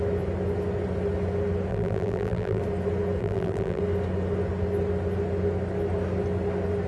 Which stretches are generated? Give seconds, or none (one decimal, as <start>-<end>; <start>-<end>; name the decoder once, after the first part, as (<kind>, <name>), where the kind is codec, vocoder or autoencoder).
1.7-2.6 (vocoder, BigVGAN v2); 3.2-3.8